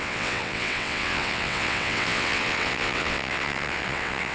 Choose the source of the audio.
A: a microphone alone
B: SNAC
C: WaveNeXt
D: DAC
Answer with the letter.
C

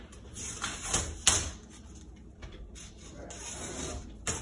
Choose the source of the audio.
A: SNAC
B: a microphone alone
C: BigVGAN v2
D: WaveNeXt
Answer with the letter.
B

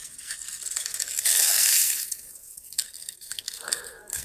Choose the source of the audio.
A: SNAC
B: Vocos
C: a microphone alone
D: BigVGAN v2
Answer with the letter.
A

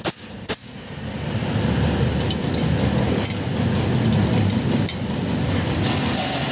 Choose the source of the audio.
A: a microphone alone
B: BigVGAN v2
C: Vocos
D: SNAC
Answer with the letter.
A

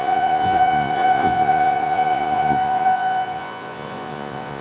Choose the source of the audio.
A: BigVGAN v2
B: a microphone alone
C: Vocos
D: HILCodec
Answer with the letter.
C